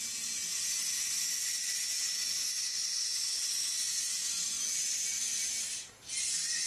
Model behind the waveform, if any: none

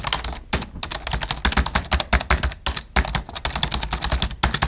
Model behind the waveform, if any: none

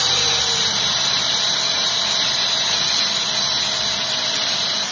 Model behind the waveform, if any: vocoder, BigVGAN v2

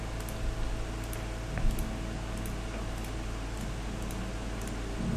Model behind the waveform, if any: none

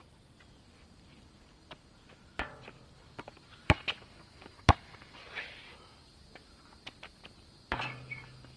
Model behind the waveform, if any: vocoder, BigVGAN v2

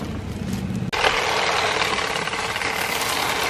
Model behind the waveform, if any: none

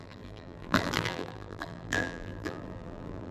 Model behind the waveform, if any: vocoder, BigVGAN v2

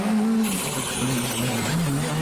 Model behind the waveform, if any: none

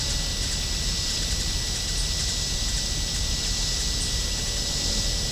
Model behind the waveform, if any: none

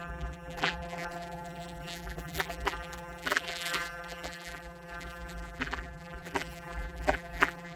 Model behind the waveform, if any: vocoder, BigVGAN v2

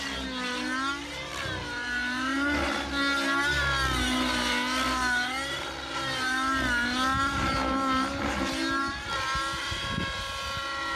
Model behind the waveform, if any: none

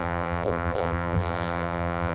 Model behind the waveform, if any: vocoder, BigVGAN v2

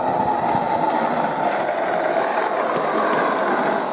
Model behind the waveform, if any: none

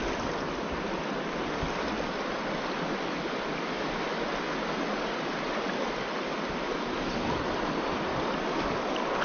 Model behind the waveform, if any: none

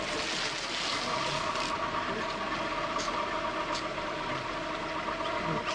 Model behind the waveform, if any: none